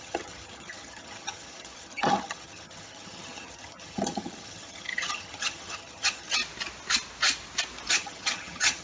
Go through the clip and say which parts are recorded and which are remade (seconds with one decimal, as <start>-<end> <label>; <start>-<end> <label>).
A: 0.0-6.4 remade; 6.4-7.9 recorded; 7.9-8.8 remade